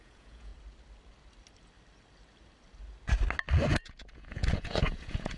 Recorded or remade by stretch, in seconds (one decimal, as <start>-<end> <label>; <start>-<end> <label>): 0.0-0.5 remade; 0.5-3.7 recorded; 3.7-5.4 remade

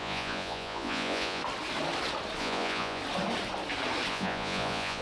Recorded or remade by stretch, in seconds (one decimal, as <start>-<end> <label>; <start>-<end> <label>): 0.0-1.4 remade; 1.4-2.4 recorded; 2.4-3.0 remade; 3.0-4.1 recorded; 4.1-5.0 remade

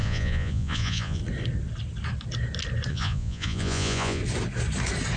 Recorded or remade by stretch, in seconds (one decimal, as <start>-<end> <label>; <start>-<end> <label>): 0.0-1.2 remade; 1.2-2.9 recorded; 2.9-4.2 remade; 4.2-5.2 recorded

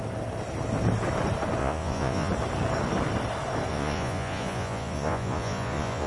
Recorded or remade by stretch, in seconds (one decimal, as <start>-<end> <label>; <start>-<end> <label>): 0.0-1.6 recorded; 1.6-2.3 remade; 2.3-3.7 recorded; 3.7-6.1 remade

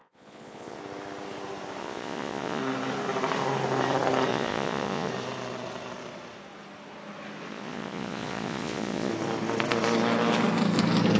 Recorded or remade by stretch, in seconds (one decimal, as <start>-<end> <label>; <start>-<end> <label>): 0.0-0.8 remade; 0.8-1.8 recorded; 1.8-2.6 remade; 2.6-4.3 recorded; 4.3-5.1 remade; 5.1-7.5 recorded; 7.5-9.1 remade; 9.1-11.2 recorded